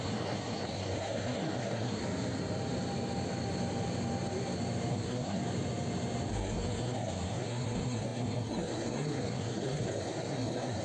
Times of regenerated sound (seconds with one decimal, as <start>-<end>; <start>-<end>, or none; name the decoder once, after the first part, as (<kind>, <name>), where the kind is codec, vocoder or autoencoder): 0.0-2.0 (codec, SNAC); 4.9-5.4; 6.3-10.8